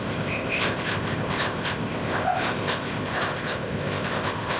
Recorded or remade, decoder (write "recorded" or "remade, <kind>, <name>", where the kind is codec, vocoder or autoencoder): remade, codec, ZipCodec